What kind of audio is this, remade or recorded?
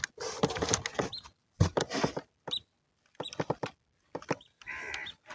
recorded